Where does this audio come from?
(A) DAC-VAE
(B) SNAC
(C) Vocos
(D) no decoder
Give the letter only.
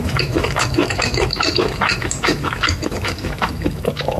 A